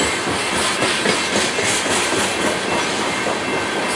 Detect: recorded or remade recorded